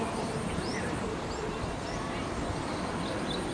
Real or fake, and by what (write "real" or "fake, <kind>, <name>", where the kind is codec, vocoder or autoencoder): real